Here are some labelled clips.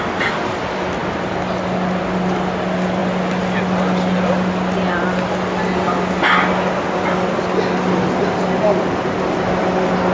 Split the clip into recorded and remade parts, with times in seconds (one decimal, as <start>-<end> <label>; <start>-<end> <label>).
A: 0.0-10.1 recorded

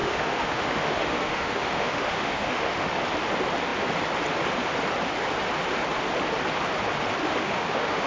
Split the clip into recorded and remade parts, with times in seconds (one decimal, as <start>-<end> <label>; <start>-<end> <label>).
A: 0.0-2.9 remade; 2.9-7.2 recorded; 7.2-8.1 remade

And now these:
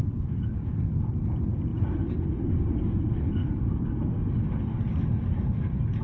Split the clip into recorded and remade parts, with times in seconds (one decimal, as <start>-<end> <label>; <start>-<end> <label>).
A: 0.0-6.0 recorded

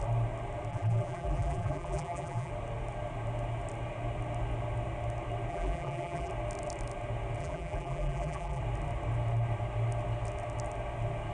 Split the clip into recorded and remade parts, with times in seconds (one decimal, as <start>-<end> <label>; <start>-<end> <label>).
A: 0.0-0.7 recorded; 0.7-2.5 remade; 2.5-5.5 recorded; 5.5-6.3 remade; 6.3-7.4 recorded; 7.4-8.6 remade; 8.6-11.3 recorded

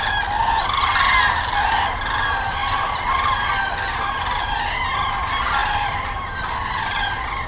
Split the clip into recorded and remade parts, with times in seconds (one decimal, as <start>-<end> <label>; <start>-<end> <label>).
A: 0.0-2.6 recorded; 2.6-4.2 remade; 4.2-5.6 recorded; 5.6-6.5 remade; 6.5-7.5 recorded

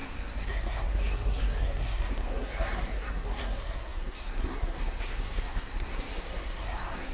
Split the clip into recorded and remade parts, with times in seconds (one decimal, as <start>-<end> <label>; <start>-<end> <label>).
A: 0.0-7.1 remade

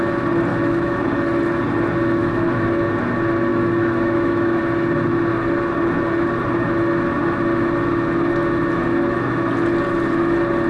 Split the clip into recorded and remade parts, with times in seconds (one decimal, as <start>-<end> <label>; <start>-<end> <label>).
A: 0.0-0.5 recorded; 0.5-1.0 remade; 1.0-2.2 recorded; 2.2-2.7 remade; 2.7-3.5 recorded; 3.5-4.6 remade; 4.6-10.7 recorded